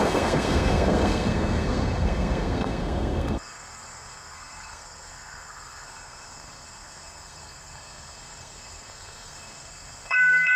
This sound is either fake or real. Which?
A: fake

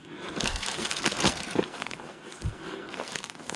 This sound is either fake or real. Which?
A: fake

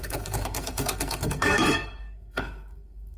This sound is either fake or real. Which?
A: fake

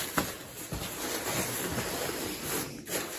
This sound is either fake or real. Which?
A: real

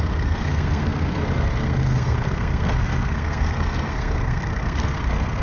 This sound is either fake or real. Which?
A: fake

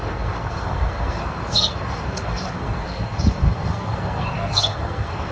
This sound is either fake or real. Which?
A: fake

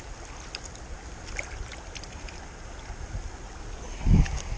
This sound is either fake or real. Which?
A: real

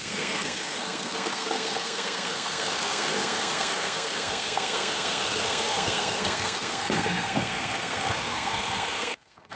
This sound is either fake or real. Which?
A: fake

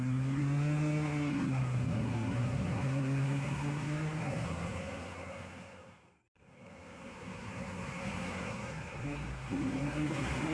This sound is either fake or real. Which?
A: fake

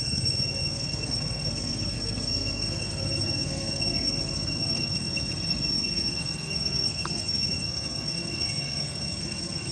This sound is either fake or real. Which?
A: fake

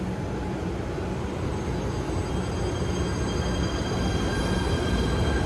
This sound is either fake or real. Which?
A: real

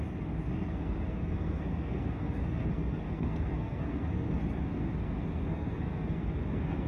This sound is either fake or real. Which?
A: fake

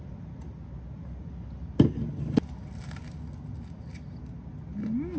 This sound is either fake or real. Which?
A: real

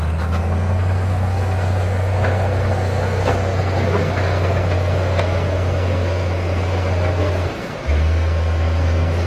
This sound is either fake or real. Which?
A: fake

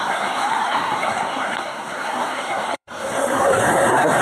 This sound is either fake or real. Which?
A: fake